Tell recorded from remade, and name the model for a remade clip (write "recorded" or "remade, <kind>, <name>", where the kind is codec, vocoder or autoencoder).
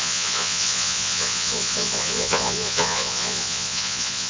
remade, vocoder, Vocos